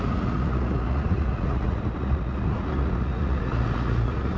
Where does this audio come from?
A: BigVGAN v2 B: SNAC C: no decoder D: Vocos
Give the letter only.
D